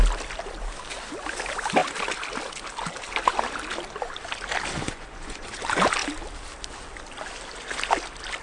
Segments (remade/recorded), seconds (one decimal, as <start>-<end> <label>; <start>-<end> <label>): 0.0-4.8 recorded; 4.8-5.6 remade; 5.6-8.4 recorded